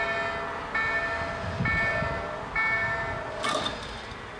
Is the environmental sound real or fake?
real